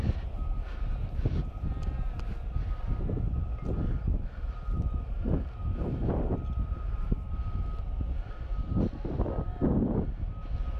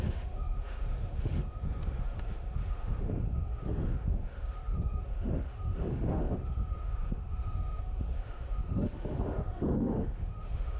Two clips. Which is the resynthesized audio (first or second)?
second